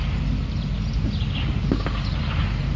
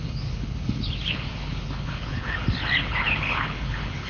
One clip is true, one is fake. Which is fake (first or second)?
second